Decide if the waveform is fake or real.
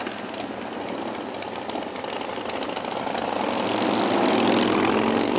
real